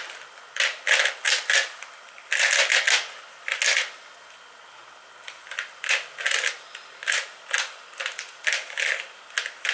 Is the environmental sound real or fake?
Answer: real